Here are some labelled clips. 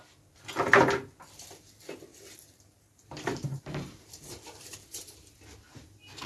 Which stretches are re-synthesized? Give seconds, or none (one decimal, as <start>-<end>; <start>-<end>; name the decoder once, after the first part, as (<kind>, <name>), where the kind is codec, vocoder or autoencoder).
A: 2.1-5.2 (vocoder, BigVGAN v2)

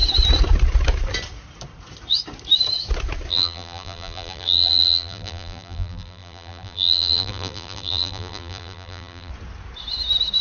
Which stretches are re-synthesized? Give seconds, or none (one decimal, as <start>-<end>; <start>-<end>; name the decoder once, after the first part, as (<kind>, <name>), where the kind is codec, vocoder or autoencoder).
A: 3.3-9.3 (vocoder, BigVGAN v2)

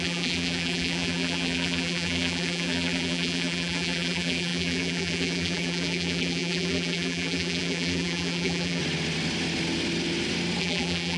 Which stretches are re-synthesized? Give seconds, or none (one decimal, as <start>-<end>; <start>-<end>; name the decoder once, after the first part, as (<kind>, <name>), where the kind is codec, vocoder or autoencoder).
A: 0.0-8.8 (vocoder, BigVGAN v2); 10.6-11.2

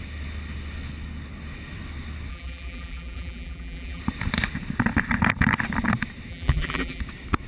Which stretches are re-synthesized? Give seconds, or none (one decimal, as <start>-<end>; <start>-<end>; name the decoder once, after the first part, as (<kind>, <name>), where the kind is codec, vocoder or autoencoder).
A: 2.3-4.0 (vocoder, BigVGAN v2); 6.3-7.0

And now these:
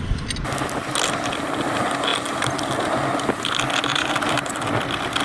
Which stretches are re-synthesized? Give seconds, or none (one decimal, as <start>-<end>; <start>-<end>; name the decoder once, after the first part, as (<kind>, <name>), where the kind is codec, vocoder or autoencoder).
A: 3.9-4.6 (vocoder, BigVGAN v2)